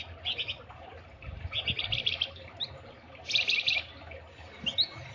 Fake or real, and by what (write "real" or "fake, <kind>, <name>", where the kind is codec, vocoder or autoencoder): real